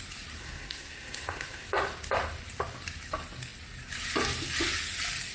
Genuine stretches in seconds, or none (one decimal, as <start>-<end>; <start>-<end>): 0.0-0.4; 1.7-5.3